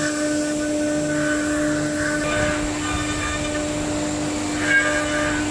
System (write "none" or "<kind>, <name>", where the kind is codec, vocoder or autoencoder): none